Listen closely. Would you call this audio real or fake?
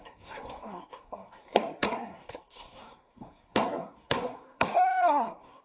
fake